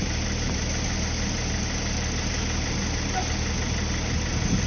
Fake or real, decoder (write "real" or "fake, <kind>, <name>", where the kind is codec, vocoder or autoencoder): real